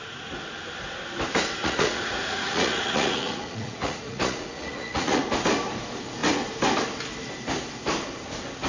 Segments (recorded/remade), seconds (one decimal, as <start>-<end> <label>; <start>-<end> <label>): 0.0-1.6 recorded; 1.6-5.2 remade; 5.2-8.7 recorded